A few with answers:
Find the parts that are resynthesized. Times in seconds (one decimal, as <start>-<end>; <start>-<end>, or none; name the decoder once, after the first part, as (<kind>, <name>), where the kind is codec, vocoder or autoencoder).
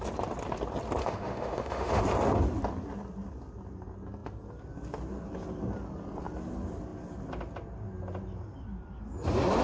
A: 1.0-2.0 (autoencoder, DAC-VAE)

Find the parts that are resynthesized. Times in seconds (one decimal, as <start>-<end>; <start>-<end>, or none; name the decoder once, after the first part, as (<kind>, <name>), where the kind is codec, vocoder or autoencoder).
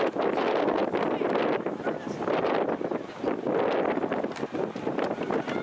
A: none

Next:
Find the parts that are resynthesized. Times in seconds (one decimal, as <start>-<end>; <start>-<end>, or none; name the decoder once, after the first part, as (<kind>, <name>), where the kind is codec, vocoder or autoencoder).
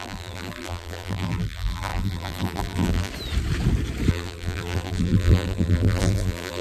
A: 0.0-3.1 (vocoder, BigVGAN v2); 4.1-6.6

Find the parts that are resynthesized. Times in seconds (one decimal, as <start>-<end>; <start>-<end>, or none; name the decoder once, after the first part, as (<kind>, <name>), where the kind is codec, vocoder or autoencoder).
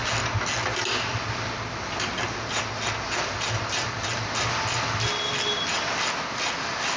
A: none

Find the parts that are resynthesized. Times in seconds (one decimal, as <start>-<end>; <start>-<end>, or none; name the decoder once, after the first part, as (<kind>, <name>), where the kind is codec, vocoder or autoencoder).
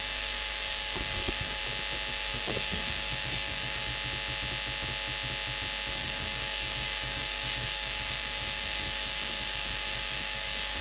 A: 0.0-1.6 (codec, DAC); 2.1-3.9; 5.9-10.8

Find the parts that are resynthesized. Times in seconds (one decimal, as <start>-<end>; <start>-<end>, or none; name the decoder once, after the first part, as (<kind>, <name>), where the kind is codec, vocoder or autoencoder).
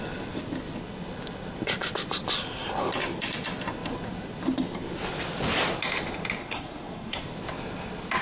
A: 6.4-7.2 (codec, SNAC)